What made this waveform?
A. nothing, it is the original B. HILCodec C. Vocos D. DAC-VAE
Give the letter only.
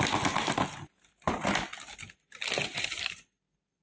A